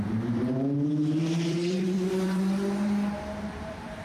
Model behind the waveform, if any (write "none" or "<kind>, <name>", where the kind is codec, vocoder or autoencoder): vocoder, BigVGAN v2